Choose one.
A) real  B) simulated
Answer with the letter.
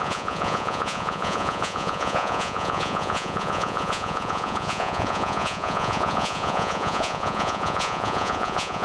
B